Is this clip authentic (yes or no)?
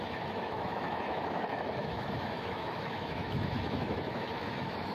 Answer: no